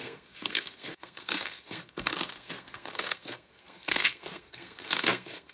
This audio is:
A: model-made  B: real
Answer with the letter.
A